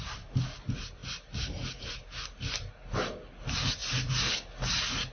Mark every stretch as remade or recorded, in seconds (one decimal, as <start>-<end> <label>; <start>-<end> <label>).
0.0-5.1 recorded